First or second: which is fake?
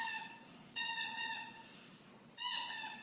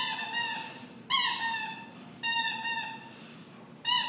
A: first